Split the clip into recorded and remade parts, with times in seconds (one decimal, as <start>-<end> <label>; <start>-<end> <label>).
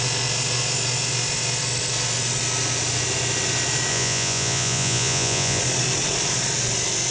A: 0.0-3.9 recorded; 3.9-5.6 remade; 5.6-7.1 recorded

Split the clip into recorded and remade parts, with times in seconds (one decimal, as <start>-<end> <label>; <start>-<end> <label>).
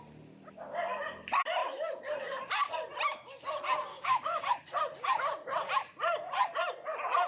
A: 0.0-3.9 recorded; 3.9-4.4 remade; 4.4-7.3 recorded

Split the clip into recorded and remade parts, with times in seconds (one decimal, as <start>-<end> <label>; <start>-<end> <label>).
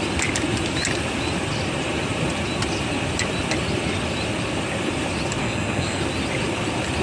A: 0.0-5.4 recorded; 5.4-6.0 remade; 6.0-7.0 recorded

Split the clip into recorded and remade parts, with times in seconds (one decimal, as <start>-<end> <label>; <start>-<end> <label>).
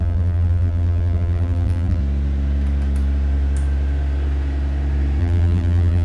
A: 0.0-2.0 remade; 2.0-5.2 recorded; 5.2-6.0 remade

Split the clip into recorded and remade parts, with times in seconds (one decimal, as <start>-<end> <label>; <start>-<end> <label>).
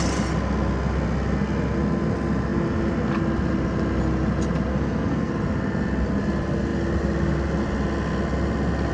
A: 0.0-4.7 recorded; 4.7-5.3 remade; 5.3-8.9 recorded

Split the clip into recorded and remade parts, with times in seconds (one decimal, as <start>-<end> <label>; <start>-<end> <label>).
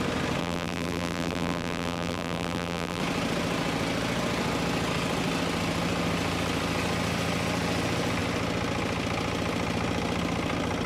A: 0.0-0.4 recorded; 0.4-3.0 remade; 3.0-10.9 recorded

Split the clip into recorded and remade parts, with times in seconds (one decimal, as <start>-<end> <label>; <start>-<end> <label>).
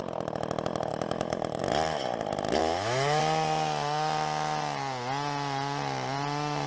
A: 0.0-0.9 recorded; 0.9-1.6 remade; 1.6-2.6 recorded; 2.6-3.2 remade; 3.2-6.7 recorded